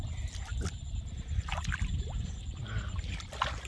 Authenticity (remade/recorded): recorded